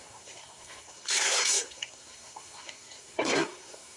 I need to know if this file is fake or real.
fake